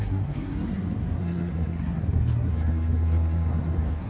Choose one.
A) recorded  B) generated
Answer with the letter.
B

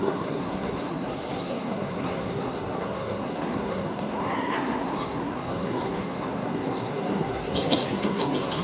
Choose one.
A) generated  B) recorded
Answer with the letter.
A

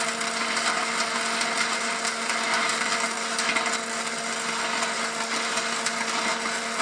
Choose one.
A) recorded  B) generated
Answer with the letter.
A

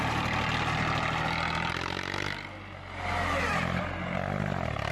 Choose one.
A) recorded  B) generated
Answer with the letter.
A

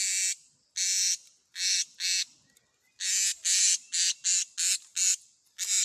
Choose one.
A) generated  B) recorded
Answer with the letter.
B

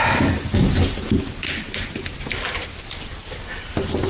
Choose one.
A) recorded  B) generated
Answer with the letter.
A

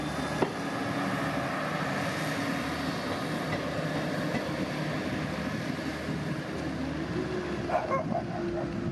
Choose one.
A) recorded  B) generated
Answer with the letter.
A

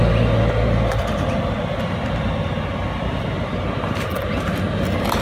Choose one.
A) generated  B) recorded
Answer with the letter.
B